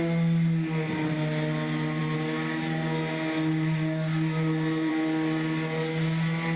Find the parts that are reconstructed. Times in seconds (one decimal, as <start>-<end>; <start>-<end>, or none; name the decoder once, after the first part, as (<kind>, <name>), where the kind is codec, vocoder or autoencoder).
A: none